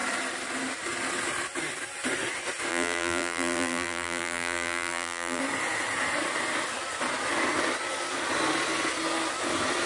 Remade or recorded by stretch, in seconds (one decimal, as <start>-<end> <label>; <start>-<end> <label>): 0.0-2.7 recorded; 2.7-5.4 remade; 5.4-9.9 recorded